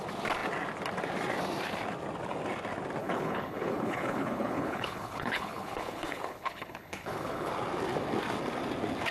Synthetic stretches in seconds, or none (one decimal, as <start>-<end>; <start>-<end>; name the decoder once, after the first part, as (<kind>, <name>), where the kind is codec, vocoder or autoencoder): 3.0-7.5 (codec, HILCodec)